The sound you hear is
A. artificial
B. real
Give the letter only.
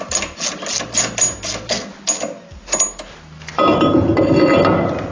B